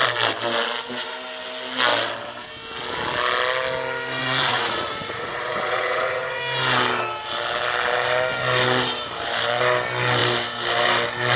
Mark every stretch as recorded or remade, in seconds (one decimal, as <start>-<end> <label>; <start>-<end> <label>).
0.0-4.2 recorded; 4.2-6.4 remade; 6.4-11.4 recorded